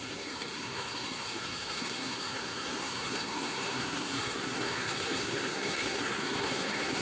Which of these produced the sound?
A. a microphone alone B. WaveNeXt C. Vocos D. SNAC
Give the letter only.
D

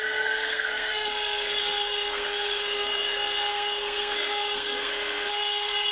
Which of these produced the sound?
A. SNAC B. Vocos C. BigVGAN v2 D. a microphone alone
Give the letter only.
A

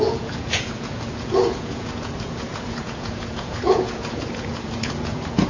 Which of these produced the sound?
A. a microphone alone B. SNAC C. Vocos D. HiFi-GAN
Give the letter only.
C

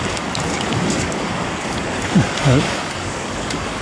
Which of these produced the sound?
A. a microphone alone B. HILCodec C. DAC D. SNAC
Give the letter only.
C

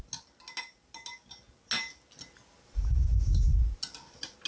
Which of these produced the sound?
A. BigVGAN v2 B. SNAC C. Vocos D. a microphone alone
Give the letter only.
D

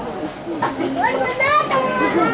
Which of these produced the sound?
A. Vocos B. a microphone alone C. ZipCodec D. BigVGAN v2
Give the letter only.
B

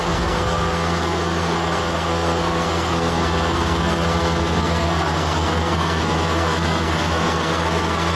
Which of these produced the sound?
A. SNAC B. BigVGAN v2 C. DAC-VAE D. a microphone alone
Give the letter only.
A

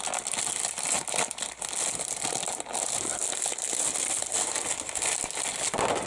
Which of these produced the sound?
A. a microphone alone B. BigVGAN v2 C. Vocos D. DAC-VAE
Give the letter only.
A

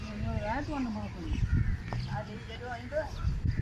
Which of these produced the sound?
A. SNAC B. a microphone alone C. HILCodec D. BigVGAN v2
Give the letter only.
B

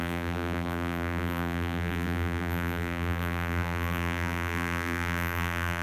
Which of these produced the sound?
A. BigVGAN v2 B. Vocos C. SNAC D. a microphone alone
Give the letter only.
A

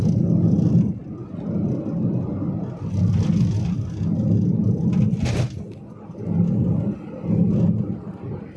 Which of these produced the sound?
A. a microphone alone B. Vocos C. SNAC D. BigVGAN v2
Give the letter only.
A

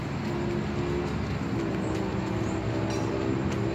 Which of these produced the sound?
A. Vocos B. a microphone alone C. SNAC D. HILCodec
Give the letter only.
B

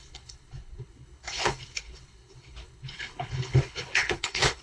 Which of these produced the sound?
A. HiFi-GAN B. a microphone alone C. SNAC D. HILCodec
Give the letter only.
D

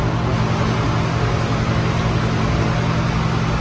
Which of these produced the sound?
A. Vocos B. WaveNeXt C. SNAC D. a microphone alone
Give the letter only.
D